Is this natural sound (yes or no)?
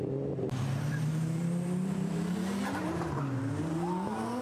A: no